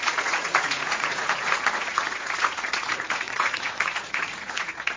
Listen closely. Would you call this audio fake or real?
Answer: fake